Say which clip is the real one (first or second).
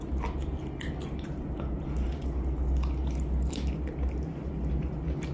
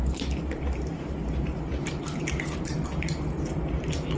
first